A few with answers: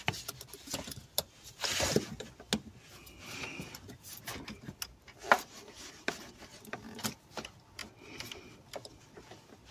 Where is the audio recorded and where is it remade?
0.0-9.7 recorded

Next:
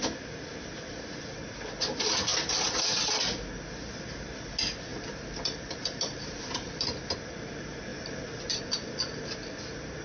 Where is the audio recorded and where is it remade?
0.0-4.9 recorded; 4.9-7.0 remade; 7.0-7.9 recorded; 7.9-8.6 remade; 8.6-10.0 recorded

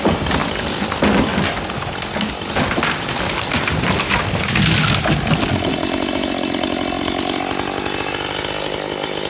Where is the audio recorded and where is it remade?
0.0-9.3 recorded

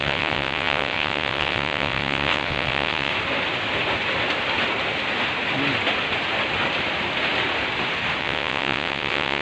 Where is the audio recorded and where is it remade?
0.0-3.1 remade; 3.1-8.2 recorded; 8.2-9.4 remade